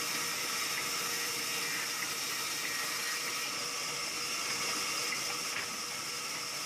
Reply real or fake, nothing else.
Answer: real